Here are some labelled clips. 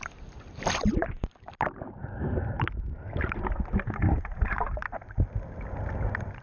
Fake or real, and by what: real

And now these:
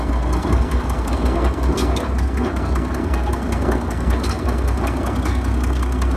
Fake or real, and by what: fake, codec, SNAC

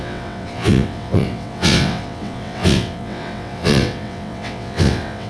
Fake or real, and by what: fake, vocoder, WaveNeXt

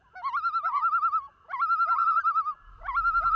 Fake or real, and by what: real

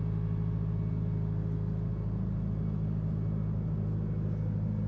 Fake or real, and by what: real